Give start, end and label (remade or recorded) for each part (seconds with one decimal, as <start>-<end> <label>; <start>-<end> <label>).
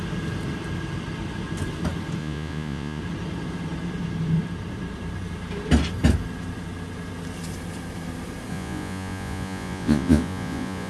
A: 0.0-2.2 recorded; 2.2-3.0 remade; 3.0-8.5 recorded; 8.5-10.9 remade